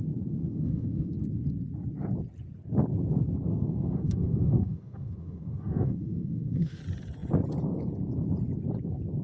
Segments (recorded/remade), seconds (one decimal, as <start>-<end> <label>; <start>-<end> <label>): 0.0-0.4 recorded; 0.4-1.1 remade; 1.1-3.5 recorded; 3.5-6.8 remade; 6.8-9.2 recorded